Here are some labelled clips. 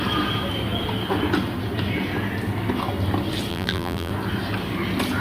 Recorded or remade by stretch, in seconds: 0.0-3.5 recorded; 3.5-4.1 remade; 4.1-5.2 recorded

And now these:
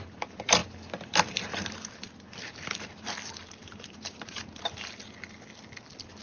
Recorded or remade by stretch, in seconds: 0.0-3.6 recorded; 3.6-5.0 remade; 5.0-6.2 recorded

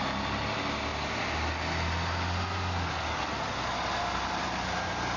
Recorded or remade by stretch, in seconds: 0.0-5.2 recorded

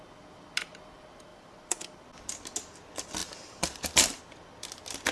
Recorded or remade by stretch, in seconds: 0.0-1.3 recorded; 1.3-2.1 remade; 2.1-3.2 recorded; 3.2-4.2 remade; 4.2-5.1 recorded

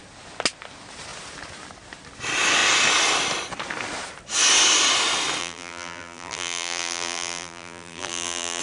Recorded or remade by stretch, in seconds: 0.0-5.4 recorded; 5.4-8.6 remade

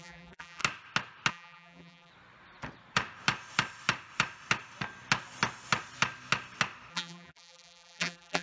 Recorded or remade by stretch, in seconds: 0.0-0.6 remade; 0.6-1.3 recorded; 1.3-2.1 remade; 2.1-6.9 recorded; 6.9-8.4 remade

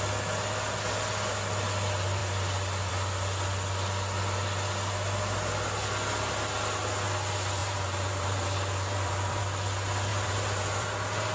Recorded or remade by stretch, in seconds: 0.0-7.6 recorded; 7.6-9.4 remade; 9.4-10.1 recorded; 10.1-11.3 remade